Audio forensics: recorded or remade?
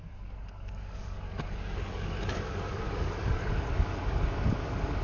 remade